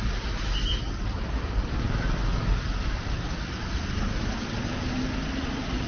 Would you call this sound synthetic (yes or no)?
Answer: no